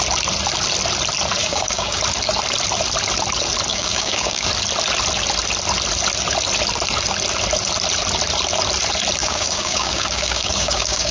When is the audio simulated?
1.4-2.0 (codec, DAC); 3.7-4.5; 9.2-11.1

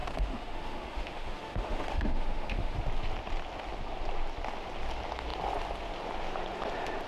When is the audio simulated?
0.0-2.8 (autoencoder, DAC-VAE)

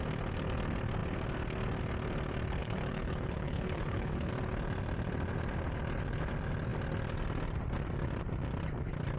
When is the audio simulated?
2.6-4.3 (codec, HILCodec)

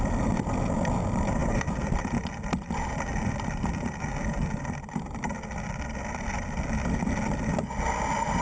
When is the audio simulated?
none

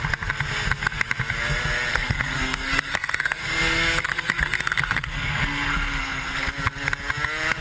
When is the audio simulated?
1.9-6.5 (codec, SNAC)

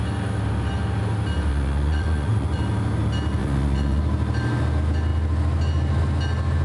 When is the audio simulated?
1.5-2.6 (vocoder, Vocos); 3.4-4.0